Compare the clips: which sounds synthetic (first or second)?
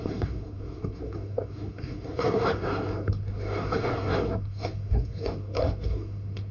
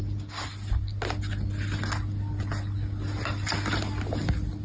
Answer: first